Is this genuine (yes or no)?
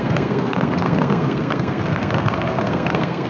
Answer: no